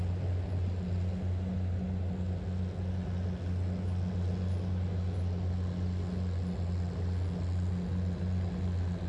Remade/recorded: recorded